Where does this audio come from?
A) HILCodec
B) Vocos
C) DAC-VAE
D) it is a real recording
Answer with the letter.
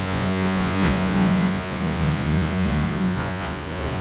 B